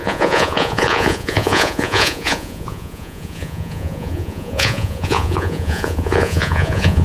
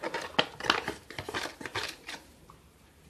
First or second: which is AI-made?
first